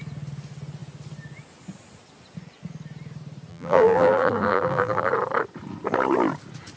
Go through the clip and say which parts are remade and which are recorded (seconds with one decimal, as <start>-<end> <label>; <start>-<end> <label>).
0.0-3.5 recorded; 3.5-5.1 remade; 5.1-6.8 recorded